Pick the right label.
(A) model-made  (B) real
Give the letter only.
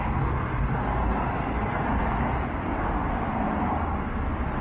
B